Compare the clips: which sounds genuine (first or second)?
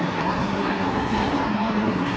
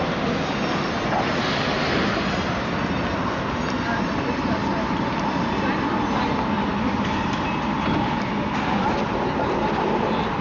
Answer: second